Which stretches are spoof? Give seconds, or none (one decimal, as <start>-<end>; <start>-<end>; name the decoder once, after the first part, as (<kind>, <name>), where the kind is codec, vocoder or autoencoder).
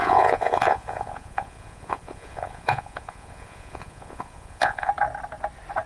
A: 0.0-4.9 (vocoder, Vocos)